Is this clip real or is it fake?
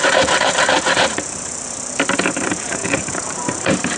fake